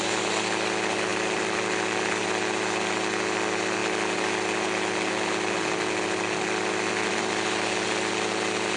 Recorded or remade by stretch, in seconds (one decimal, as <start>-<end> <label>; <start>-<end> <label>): 0.0-1.1 recorded; 1.1-2.2 remade; 2.2-8.8 recorded